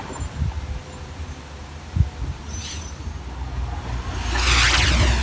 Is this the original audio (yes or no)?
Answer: yes